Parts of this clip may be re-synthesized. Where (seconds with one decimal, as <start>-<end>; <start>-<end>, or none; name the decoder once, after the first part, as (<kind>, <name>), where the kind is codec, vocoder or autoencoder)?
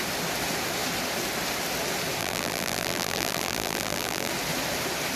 2.2-4.3 (vocoder, BigVGAN v2)